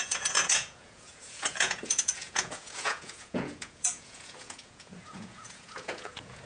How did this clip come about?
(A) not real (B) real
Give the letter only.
A